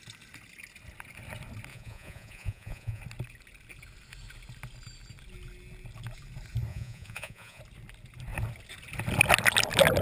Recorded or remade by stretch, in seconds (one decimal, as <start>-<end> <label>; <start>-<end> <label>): 0.0-1.7 recorded; 1.7-3.0 remade; 3.0-6.7 recorded; 6.7-7.6 remade; 7.6-10.0 recorded